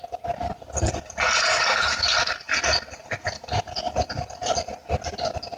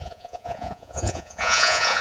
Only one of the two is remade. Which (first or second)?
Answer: second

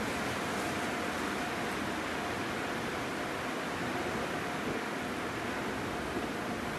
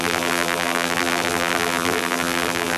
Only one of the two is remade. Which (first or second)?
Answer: second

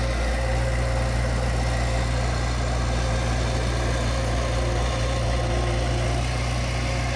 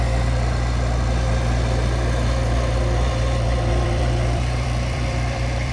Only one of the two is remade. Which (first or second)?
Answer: second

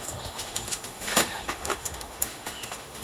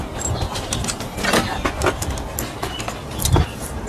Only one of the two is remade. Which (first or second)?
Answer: first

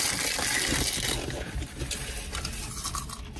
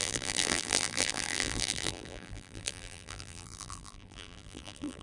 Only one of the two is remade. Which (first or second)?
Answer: second